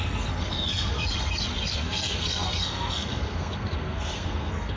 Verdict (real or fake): fake